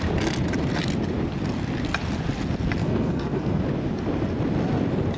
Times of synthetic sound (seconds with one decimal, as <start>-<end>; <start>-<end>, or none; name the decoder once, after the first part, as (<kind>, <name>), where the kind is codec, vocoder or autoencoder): 2.8-3.6 (codec, SNAC)